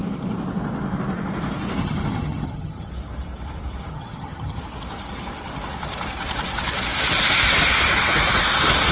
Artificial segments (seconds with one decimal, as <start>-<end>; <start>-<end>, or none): 1.8-2.9; 3.9-4.6